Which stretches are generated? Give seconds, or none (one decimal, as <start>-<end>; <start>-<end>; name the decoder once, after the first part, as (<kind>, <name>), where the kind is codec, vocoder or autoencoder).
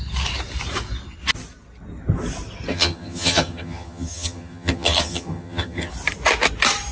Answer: 2.7-5.9 (vocoder, HiFi-GAN)